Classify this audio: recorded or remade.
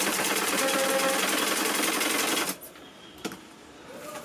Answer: recorded